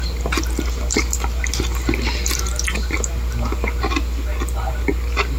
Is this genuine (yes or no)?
yes